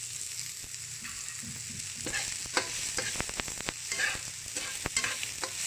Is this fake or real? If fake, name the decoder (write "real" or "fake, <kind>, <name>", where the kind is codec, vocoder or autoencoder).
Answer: real